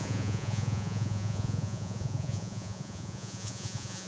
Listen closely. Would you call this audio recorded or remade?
remade